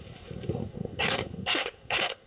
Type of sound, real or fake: fake